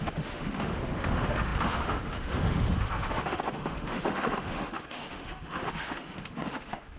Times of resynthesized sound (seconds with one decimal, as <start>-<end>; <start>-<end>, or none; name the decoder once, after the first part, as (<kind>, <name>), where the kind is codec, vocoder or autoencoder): 0.0-7.0 (autoencoder, DAC-VAE)